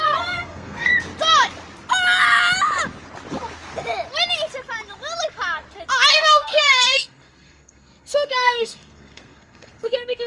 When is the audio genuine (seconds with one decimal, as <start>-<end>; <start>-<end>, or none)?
0.9-6.1